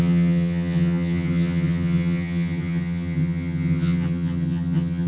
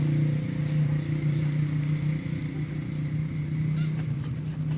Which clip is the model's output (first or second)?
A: first